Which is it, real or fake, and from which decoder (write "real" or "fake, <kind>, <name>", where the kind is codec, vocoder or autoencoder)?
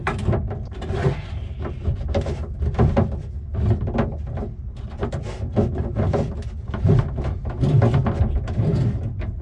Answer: real